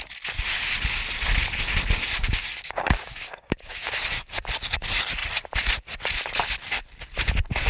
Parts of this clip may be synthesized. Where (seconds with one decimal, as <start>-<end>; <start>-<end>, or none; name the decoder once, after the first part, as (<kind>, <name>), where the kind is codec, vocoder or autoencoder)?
2.2-3.9 (codec, DAC)